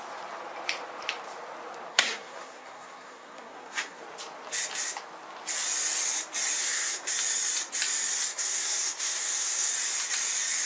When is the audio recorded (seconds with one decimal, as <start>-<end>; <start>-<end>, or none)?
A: 0.0-1.9; 4.0-6.6; 7.1-8.3; 9.7-10.7